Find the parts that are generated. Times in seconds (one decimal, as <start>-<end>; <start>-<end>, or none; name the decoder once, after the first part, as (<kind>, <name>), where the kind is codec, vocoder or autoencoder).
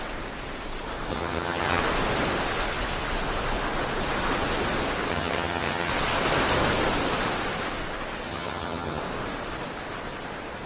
1.1-1.8 (vocoder, HiFi-GAN); 5.1-5.9; 8.3-9.0